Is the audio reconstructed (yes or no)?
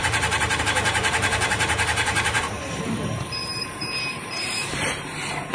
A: yes